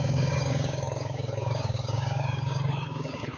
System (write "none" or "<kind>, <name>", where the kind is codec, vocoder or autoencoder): codec, DAC